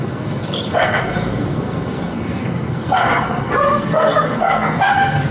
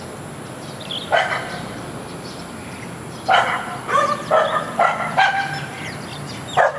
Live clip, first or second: second